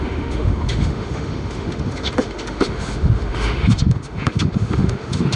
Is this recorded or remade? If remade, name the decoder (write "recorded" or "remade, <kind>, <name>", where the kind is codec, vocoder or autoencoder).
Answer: remade, autoencoder, DAC-VAE